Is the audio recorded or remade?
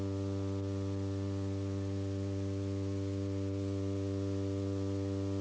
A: recorded